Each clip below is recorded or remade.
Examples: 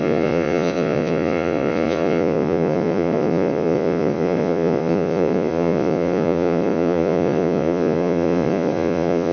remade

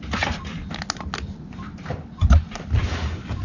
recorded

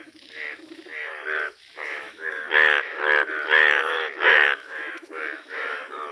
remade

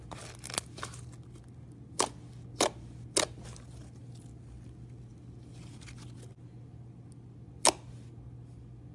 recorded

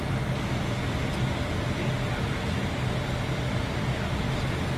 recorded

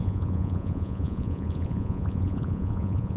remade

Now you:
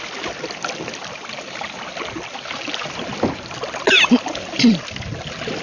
recorded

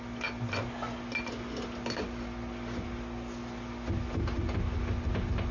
recorded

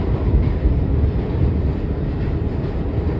recorded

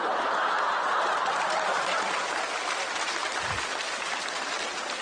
recorded